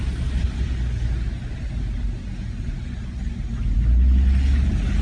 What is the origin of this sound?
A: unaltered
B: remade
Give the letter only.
A